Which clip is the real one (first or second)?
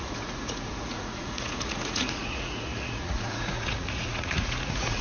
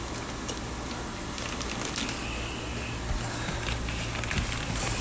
second